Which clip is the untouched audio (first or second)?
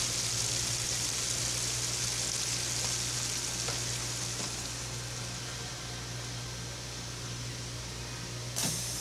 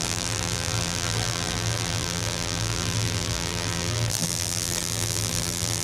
first